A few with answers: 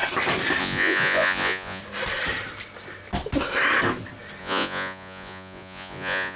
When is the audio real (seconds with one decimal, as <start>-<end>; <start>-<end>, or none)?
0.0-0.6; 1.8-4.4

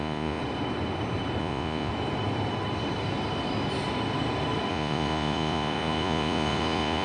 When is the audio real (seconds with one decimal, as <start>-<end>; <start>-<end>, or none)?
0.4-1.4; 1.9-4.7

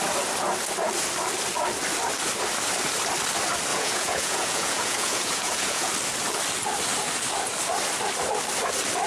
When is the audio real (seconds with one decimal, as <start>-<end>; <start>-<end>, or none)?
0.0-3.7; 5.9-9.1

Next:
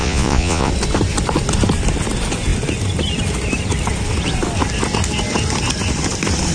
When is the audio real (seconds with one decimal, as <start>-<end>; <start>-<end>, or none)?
0.7-6.5

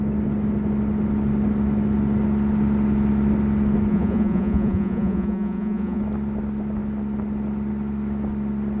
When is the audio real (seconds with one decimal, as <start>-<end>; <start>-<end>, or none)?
0.0-3.9; 6.0-8.8